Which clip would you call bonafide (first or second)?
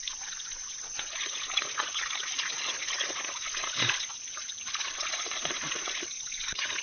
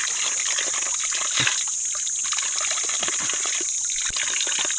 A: second